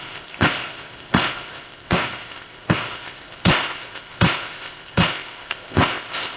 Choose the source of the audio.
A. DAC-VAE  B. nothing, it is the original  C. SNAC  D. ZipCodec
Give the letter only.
D